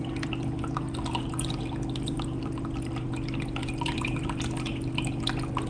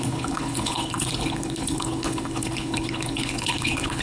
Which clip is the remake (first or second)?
second